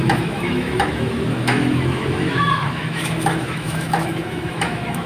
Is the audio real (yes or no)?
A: no